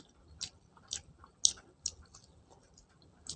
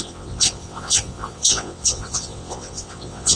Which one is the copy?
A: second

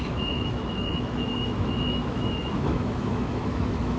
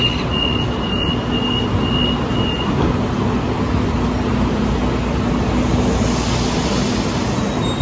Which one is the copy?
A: first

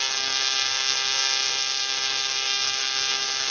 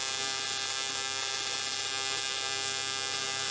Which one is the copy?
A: first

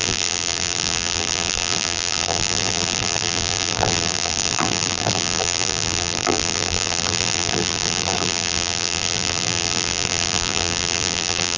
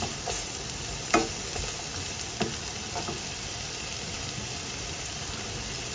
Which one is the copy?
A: first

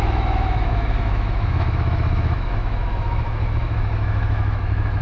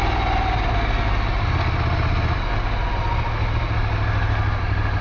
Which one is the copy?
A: first